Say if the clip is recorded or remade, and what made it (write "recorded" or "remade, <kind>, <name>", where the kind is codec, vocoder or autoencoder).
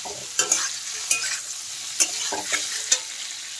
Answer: recorded